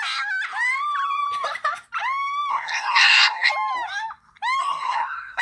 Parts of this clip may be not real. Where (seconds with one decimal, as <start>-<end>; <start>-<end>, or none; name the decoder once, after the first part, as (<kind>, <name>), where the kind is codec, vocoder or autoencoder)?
2.5-3.5 (codec, SNAC); 4.6-5.4